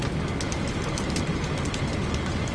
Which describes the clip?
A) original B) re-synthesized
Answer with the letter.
A